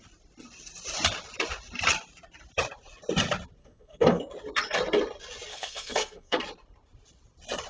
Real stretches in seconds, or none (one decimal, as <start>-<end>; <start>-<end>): 0.0-3.6; 4.2-5.5; 6.4-7.7